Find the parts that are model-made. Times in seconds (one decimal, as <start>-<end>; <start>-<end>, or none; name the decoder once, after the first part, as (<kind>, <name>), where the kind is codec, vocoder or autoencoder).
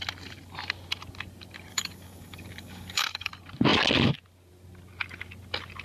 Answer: 1.7-3.3 (codec, DAC)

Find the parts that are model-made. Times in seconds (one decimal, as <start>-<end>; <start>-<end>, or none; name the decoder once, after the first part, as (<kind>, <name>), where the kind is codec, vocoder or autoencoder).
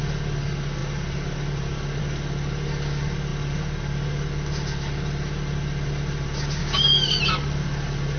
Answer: 6.6-7.2 (codec, DAC)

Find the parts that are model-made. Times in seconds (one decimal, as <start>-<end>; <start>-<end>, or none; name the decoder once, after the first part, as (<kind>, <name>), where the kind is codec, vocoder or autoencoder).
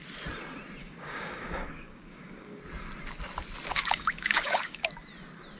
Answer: 0.8-2.6 (codec, DAC); 3.7-4.9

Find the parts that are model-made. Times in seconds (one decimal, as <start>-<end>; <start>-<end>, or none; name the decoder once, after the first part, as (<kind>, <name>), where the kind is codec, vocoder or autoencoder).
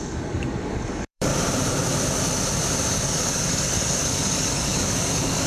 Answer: 0.0-1.3 (codec, DAC); 2.9-5.5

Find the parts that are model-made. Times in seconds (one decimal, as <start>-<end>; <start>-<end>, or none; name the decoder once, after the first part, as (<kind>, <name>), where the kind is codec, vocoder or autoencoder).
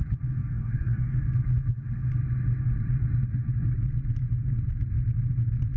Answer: 0.4-1.2 (codec, DAC)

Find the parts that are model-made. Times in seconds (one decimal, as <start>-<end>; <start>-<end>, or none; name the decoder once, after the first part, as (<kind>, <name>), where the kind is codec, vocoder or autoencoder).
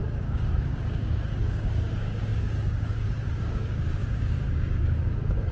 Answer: 0.0-5.5 (codec, DAC)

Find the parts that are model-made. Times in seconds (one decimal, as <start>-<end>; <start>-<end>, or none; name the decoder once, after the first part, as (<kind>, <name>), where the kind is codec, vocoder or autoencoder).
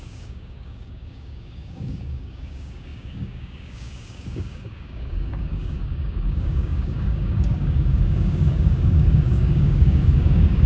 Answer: 0.0-10.7 (codec, DAC)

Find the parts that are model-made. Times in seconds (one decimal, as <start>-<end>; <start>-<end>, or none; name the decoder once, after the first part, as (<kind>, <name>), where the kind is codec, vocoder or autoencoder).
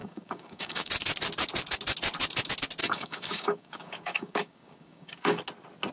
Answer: 0.0-0.9 (codec, DAC); 2.8-5.4